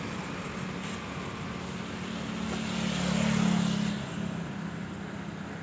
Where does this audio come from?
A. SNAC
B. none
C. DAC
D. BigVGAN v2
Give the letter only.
B